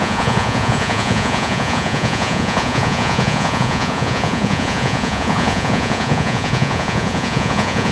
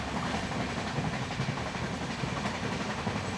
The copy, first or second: first